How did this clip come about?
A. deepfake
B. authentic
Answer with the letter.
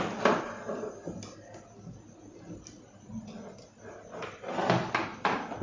B